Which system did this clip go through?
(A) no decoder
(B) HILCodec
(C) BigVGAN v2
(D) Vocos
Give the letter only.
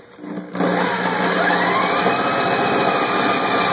A